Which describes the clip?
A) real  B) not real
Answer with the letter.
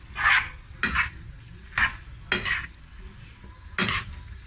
A